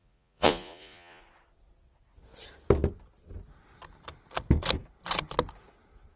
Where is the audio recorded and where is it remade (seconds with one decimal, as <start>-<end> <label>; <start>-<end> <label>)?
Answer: 0.0-1.2 remade; 1.2-6.2 recorded